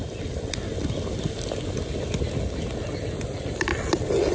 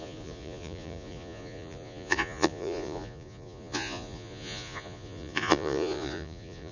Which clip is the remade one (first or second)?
second